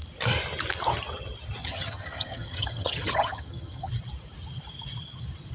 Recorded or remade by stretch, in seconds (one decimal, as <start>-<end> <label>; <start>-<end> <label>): 0.0-1.6 recorded; 1.6-3.9 remade; 3.9-5.5 recorded